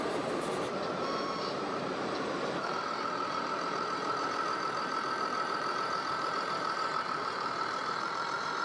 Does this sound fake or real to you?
fake